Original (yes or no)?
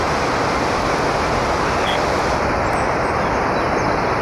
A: yes